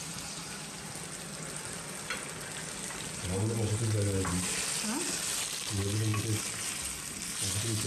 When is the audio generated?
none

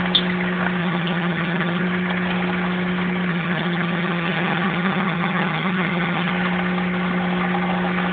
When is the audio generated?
0.8-1.8; 3.3-6.3